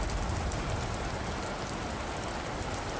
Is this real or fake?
real